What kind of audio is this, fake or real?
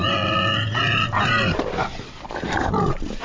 real